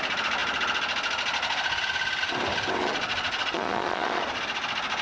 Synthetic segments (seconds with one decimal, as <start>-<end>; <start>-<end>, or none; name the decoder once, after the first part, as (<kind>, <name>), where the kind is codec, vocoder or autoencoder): 2.8-4.4 (vocoder, Vocos)